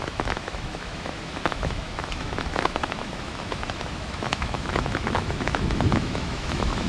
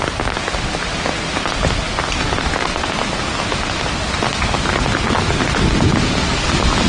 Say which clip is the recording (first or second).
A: second